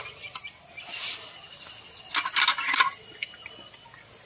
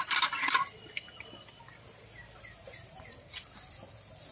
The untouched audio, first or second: first